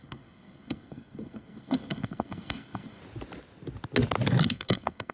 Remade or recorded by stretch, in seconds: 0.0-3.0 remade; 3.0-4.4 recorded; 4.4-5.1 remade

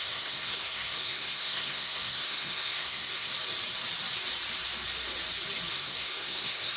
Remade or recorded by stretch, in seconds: 0.0-3.3 remade; 3.3-5.7 recorded; 5.7-6.8 remade